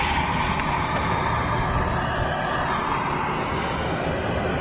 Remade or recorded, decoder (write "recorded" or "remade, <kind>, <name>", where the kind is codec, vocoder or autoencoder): recorded